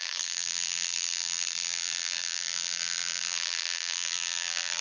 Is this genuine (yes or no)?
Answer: no